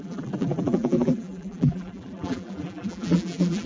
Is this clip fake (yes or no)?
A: yes